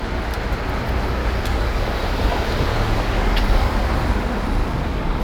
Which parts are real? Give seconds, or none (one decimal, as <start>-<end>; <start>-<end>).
0.0-1.2; 1.9-2.7; 3.9-4.6